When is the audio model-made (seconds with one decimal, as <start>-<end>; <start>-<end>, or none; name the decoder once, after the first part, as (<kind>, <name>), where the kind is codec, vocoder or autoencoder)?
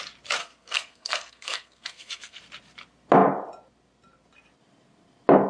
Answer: 0.4-2.4 (codec, SNAC)